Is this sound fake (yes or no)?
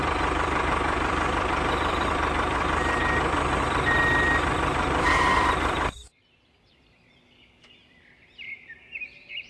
yes